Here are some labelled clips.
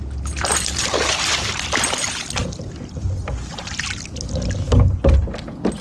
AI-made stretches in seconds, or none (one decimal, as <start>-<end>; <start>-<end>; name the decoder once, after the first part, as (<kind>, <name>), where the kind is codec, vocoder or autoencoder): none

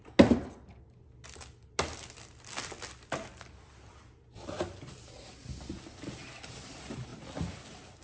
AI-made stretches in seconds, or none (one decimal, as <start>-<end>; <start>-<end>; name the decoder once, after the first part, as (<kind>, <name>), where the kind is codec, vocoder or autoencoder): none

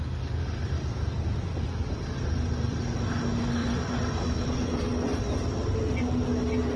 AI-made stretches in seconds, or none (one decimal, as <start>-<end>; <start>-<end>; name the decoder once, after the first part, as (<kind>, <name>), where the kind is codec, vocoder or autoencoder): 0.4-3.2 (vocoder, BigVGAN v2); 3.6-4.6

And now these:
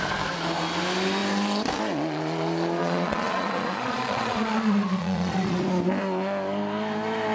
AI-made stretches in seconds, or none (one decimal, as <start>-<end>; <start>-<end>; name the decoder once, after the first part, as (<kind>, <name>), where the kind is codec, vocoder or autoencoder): 2.8-5.6 (vocoder, Vocos)

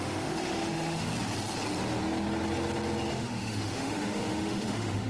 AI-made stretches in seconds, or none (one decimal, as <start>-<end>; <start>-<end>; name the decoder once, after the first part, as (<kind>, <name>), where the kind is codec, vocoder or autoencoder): 0.0-1.1 (autoencoder, DAC-VAE); 3.1-5.1

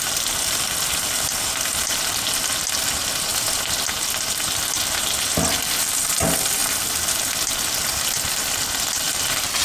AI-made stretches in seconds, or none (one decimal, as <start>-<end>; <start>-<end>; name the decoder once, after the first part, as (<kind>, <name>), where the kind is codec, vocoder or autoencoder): 3.3-3.8 (vocoder, BigVGAN v2)

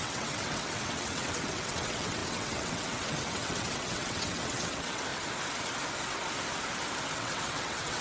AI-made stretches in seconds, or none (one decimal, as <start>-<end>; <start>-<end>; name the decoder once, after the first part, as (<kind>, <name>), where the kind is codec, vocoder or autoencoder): 0.0-5.1 (vocoder, WaveNeXt); 7.1-8.0

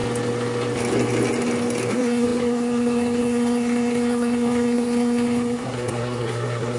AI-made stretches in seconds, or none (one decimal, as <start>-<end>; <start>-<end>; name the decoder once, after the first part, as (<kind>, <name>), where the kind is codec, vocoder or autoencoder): 1.9-6.8 (codec, SNAC)